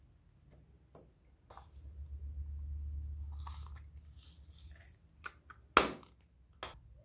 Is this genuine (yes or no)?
yes